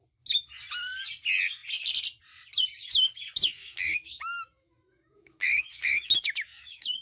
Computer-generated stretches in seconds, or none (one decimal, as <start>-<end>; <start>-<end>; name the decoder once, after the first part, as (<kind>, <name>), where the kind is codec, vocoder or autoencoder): 3.5-7.0 (autoencoder, DAC-VAE)